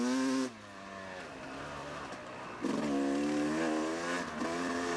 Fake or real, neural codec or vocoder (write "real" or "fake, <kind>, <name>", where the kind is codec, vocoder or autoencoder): real